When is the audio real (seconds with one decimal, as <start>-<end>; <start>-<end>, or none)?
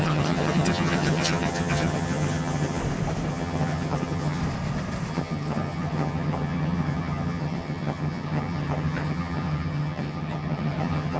2.8-3.3; 4.4-5.1